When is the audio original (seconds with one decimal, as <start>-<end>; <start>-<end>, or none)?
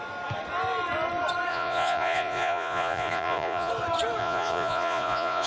0.0-1.5; 3.7-4.2